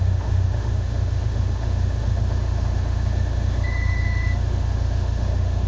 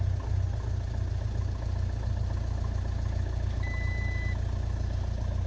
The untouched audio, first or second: second